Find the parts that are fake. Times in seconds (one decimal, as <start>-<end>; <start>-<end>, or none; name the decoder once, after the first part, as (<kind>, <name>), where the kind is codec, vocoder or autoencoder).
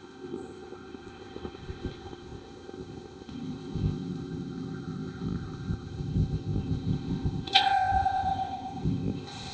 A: 0.0-9.5 (codec, ZipCodec)